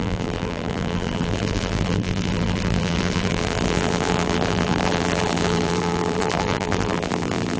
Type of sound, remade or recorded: remade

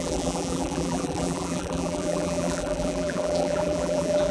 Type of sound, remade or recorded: remade